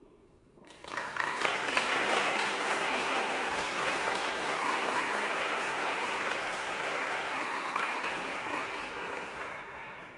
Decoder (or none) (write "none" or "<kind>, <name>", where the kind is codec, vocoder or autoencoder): codec, SNAC